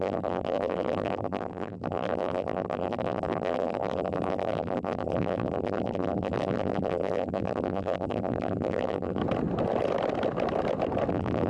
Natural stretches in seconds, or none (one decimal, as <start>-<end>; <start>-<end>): 9.2-11.1